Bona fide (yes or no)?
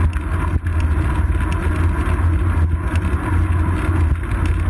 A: yes